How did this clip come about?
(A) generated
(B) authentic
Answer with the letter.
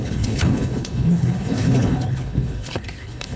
A